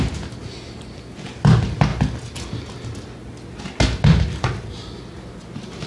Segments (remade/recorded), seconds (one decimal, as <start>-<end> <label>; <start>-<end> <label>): 0.0-5.9 recorded